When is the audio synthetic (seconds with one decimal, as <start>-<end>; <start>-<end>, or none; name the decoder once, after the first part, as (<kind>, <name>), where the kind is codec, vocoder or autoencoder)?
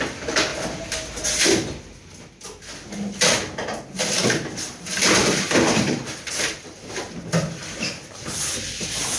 5.2-7.3 (vocoder, BigVGAN v2)